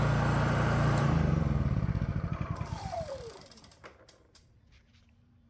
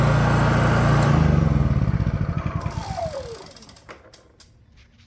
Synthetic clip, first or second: first